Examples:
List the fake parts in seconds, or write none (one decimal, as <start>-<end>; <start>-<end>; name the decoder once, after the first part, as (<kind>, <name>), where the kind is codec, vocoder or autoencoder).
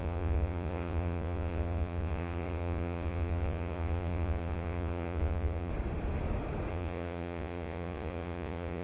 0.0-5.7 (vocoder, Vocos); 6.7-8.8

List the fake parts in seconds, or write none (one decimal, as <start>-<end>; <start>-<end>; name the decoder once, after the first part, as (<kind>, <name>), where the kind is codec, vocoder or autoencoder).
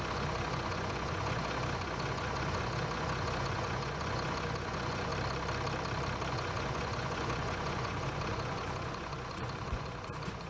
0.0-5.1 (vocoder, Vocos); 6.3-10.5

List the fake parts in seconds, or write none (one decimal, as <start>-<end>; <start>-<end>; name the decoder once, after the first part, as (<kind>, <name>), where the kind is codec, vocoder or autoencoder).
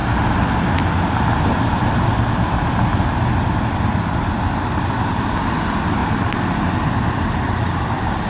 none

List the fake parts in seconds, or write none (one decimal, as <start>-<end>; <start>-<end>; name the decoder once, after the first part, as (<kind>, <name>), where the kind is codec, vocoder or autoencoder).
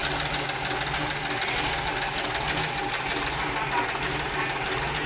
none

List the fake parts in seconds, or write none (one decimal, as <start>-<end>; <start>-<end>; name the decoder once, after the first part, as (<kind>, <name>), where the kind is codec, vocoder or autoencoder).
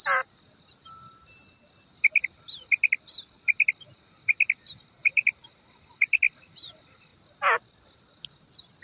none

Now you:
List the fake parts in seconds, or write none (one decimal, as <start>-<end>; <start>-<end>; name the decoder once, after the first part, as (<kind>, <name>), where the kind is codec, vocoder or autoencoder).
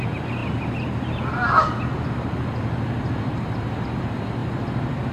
none